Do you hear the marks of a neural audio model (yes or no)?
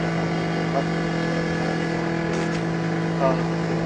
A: no